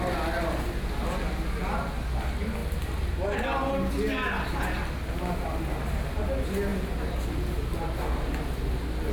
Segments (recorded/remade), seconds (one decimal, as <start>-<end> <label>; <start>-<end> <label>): 0.0-9.1 recorded